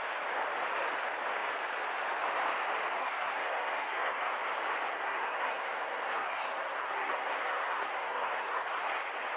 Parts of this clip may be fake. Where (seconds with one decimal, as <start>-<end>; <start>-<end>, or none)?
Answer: 3.0-4.3; 4.9-9.0

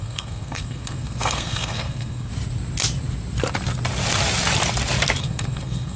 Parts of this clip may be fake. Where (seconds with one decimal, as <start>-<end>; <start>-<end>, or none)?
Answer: 0.0-2.3; 5.2-6.0